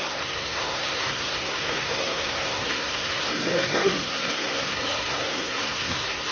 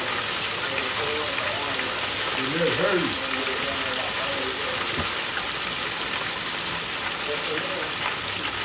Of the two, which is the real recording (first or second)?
second